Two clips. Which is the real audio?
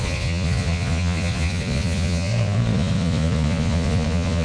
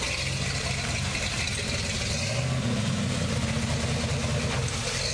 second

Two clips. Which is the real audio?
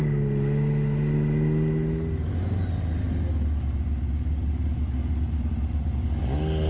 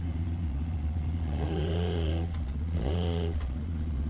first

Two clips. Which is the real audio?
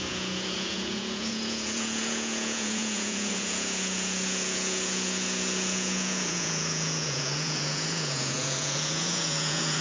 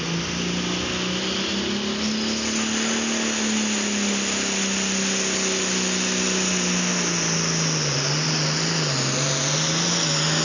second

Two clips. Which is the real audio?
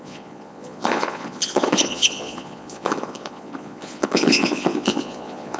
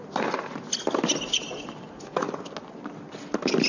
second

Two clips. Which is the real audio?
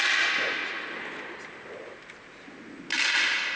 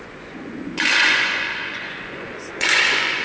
first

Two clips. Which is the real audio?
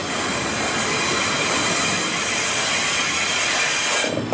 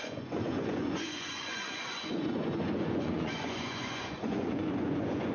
first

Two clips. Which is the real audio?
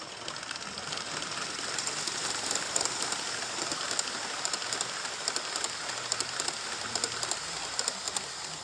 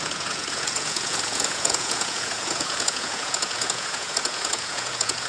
first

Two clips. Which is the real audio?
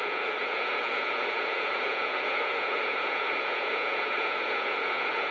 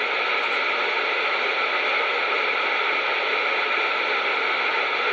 second